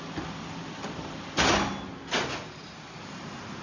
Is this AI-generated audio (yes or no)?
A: no